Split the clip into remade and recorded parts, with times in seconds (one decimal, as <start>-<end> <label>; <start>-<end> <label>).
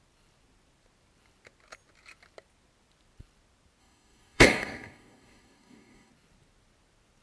0.0-3.8 recorded; 3.8-6.1 remade; 6.1-7.2 recorded